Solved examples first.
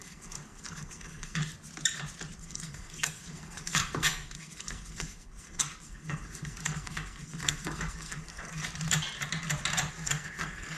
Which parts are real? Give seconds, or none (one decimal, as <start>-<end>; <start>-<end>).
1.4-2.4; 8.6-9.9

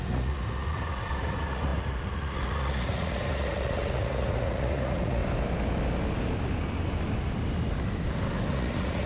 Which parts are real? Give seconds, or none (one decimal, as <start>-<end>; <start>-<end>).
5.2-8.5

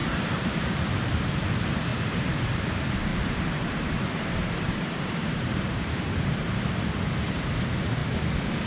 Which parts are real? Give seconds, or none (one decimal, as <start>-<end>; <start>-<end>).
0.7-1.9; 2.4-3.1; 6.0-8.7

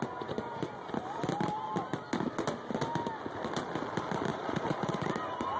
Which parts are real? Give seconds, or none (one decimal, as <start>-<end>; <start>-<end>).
0.0-4.3; 5.1-5.6

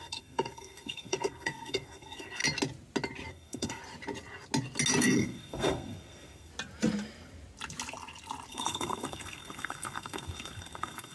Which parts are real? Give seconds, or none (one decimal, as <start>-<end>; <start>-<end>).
2.4-3.3; 3.8-5.0; 6.5-8.5

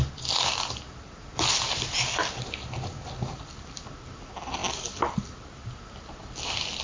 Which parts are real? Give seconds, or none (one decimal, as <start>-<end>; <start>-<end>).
0.0-6.8

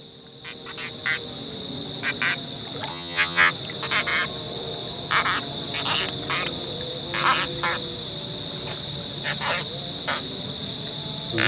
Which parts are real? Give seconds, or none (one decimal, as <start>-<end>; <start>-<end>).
0.0-2.9; 3.5-11.5

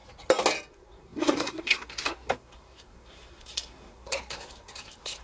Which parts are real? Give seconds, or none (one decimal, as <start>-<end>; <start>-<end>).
0.0-0.7